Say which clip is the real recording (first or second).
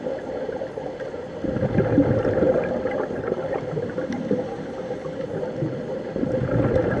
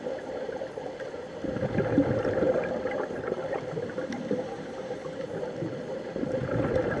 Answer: first